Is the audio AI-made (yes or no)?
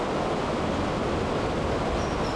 no